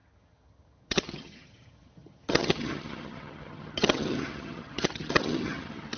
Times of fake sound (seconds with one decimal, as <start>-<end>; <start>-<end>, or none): 0.0-6.0